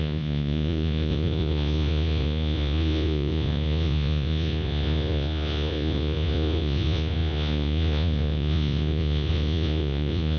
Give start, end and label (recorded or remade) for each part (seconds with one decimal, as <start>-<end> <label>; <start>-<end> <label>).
0.0-10.4 remade